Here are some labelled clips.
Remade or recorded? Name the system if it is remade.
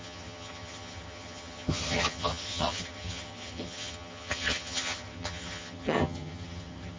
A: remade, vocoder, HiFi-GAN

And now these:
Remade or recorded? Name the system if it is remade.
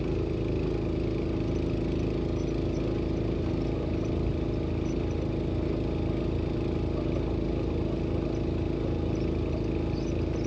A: recorded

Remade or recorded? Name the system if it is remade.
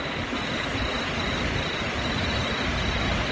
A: recorded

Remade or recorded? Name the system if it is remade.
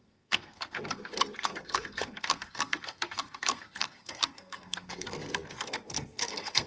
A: remade, codec, SNAC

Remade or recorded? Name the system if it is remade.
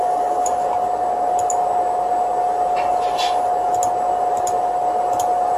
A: recorded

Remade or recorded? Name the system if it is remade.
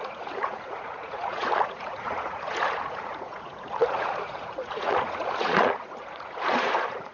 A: remade, vocoder, Vocos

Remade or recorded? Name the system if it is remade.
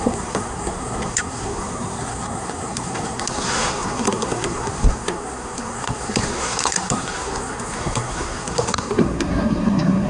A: remade, codec, SNAC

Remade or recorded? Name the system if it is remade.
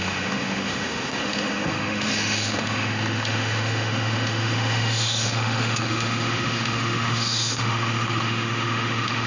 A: remade, autoencoder, DAC-VAE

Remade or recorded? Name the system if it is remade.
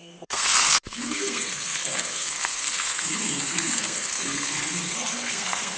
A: remade, codec, SNAC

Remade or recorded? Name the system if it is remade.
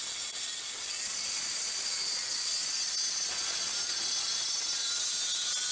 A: recorded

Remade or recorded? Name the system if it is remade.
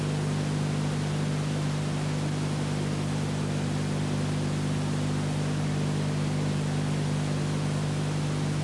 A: recorded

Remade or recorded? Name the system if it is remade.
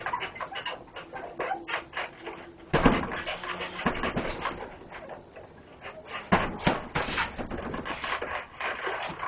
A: recorded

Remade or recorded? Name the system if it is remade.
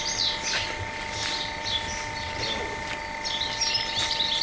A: recorded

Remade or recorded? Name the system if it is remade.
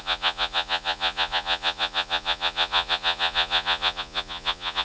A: remade, vocoder, Vocos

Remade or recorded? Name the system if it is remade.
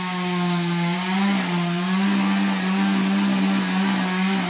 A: recorded